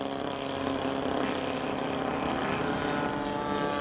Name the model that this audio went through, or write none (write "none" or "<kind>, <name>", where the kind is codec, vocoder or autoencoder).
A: none